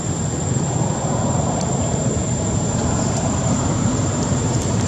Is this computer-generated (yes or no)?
yes